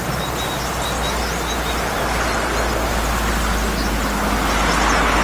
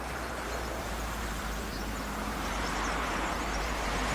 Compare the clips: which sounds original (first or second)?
first